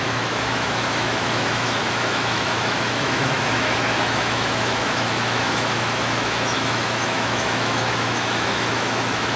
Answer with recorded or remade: remade